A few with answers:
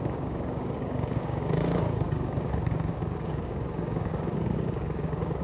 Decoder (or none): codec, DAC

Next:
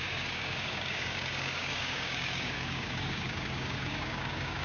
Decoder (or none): codec, DAC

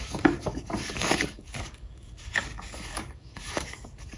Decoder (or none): codec, DAC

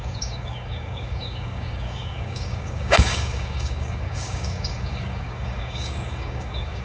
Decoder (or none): codec, DAC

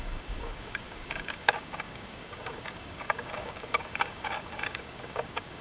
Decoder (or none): codec, DAC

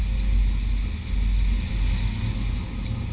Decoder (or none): none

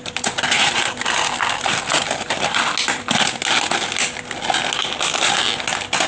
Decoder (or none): none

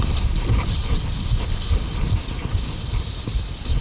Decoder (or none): none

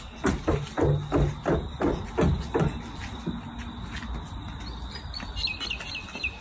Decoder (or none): none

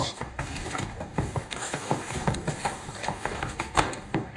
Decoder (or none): codec, DAC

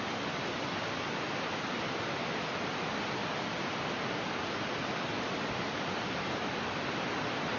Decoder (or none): none